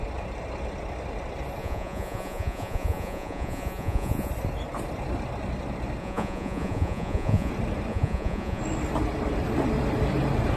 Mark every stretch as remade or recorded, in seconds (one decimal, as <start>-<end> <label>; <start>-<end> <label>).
0.0-1.6 recorded; 1.6-4.3 remade; 4.3-6.0 recorded; 6.0-7.5 remade; 7.5-7.9 recorded; 7.9-8.6 remade; 8.6-10.6 recorded